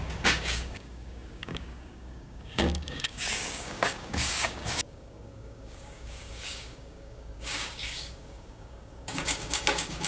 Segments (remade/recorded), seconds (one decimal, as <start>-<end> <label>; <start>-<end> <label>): 0.0-10.1 remade